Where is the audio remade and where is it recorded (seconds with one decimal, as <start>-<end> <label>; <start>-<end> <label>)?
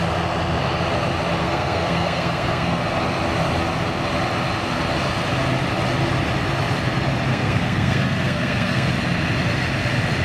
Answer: 0.0-1.4 recorded; 1.4-2.8 remade; 2.8-7.3 recorded; 7.3-8.9 remade; 8.9-10.2 recorded